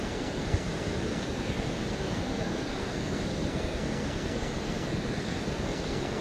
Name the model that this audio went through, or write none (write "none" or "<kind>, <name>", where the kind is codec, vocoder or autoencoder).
codec, SNAC